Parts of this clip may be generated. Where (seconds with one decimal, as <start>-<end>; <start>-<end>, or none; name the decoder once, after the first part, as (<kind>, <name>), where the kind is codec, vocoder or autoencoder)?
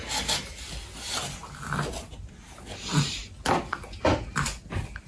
none